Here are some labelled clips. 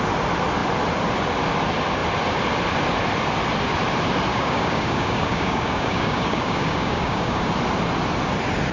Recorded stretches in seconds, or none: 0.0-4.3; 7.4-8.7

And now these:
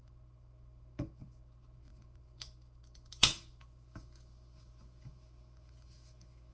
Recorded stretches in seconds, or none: none